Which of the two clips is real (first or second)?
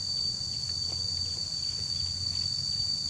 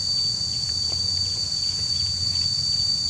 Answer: first